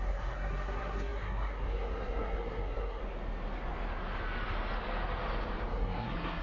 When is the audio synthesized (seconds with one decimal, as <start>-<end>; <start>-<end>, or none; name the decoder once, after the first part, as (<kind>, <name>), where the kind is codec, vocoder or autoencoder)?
0.0-3.0 (codec, SNAC); 5.7-6.4